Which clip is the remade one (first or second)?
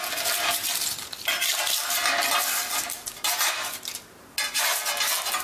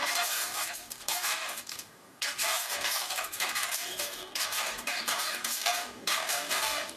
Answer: second